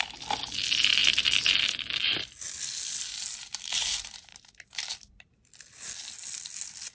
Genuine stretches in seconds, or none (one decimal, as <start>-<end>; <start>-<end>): 0.0-6.9